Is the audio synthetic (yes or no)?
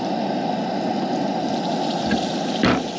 no